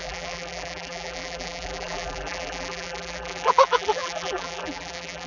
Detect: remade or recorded remade